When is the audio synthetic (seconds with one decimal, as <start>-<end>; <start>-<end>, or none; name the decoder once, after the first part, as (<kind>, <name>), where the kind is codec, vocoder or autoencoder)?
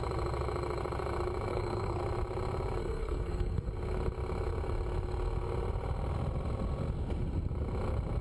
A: 1.5-2.0 (codec, SNAC); 2.8-3.7